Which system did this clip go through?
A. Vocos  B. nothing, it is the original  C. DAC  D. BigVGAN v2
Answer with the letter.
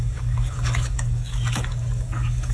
C